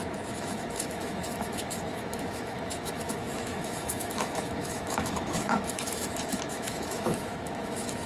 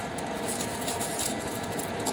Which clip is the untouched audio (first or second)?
second